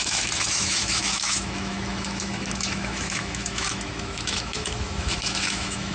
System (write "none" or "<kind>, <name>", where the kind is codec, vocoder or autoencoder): autoencoder, DAC-VAE